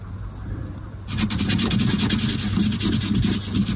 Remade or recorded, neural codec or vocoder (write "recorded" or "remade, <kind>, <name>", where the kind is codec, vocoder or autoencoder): recorded